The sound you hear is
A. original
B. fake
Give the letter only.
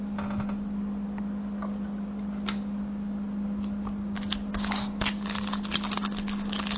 A